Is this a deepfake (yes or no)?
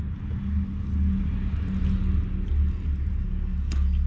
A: no